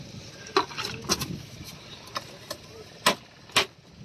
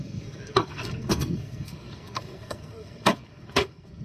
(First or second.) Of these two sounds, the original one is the first